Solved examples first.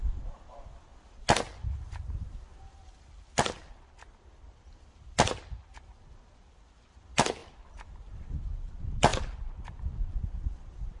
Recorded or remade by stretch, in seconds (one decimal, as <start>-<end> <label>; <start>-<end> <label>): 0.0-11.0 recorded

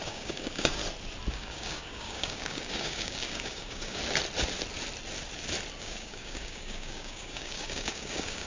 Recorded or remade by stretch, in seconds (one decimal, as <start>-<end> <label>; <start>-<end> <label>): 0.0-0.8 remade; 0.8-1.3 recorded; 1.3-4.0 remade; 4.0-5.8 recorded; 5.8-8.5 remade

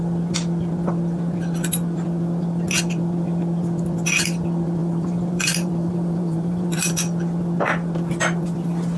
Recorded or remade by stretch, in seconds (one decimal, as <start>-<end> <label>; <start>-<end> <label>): 0.0-4.8 recorded; 4.8-6.9 remade; 6.9-9.0 recorded

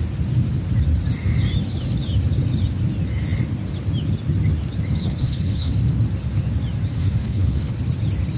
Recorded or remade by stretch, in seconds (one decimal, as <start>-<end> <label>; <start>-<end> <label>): 0.0-5.0 recorded; 5.0-5.7 remade; 5.7-7.0 recorded; 7.0-7.7 remade; 7.7-8.4 recorded

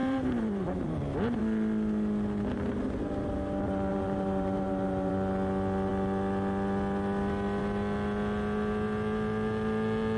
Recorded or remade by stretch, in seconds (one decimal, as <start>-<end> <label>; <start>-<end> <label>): 0.0-1.4 remade; 1.4-3.9 recorded; 3.9-5.1 remade; 5.1-10.2 recorded

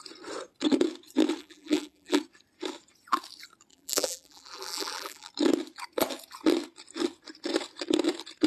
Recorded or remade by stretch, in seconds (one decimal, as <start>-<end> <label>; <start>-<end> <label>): 0.0-1.4 recorded; 1.4-2.2 remade; 2.2-3.7 recorded; 3.7-5.3 remade; 5.3-8.5 recorded

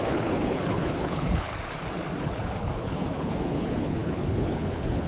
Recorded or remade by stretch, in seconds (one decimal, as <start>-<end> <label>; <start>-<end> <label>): 0.0-1.5 remade; 1.5-2.2 recorded; 2.2-5.1 remade

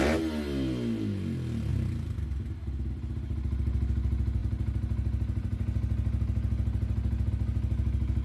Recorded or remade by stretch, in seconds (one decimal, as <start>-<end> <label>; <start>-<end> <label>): 0.0-8.2 recorded